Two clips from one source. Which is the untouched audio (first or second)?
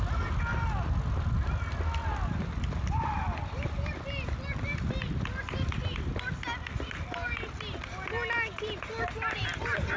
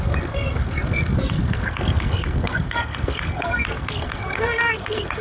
first